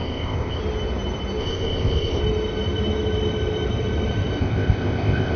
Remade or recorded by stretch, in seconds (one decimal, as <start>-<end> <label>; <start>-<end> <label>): 0.0-0.6 remade; 0.6-1.4 recorded; 1.4-2.2 remade; 2.2-4.4 recorded; 4.4-5.4 remade